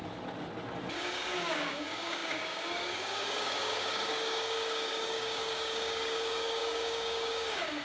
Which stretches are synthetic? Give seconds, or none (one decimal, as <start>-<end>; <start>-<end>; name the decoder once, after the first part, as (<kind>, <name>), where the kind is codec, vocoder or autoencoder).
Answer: 0.9-7.8 (codec, DAC)